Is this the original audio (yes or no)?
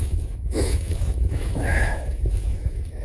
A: no